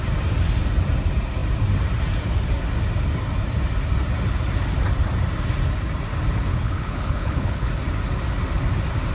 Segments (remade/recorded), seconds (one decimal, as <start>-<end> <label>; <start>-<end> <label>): 0.0-6.5 recorded; 6.5-7.7 remade; 7.7-9.1 recorded